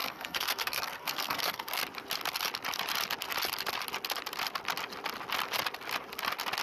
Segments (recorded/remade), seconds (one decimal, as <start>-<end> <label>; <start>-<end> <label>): 0.0-1.8 remade; 1.8-6.6 recorded